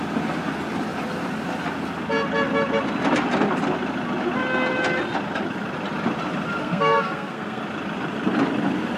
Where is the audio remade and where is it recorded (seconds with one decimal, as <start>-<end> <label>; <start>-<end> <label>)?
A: 0.0-6.6 recorded; 6.6-7.6 remade; 7.6-9.0 recorded